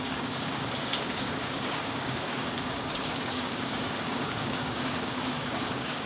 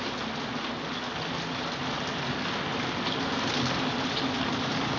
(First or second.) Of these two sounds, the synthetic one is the first